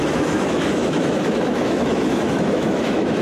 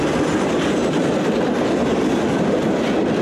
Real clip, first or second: second